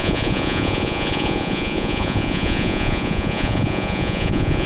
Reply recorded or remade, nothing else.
remade